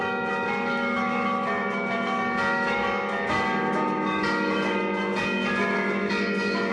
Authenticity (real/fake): fake